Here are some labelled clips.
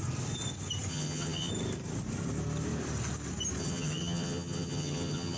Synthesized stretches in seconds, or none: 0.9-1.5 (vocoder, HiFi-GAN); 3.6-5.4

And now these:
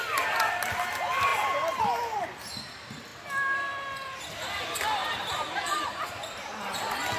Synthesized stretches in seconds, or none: 5.0-6.1 (vocoder, BigVGAN v2)

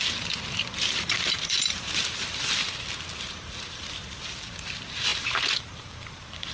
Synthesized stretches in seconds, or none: 0.0-2.6 (vocoder, BigVGAN v2); 3.2-6.5